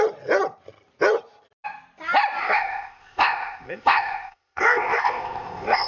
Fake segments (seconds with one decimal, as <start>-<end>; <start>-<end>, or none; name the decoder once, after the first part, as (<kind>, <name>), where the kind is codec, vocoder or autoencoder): 2.4-5.9 (codec, ZipCodec)